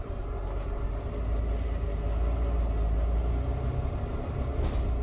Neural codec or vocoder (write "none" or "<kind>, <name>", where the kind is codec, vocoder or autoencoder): none